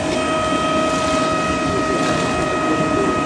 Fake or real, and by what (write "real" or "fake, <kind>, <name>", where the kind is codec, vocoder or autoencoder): real